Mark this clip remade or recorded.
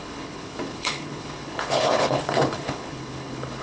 remade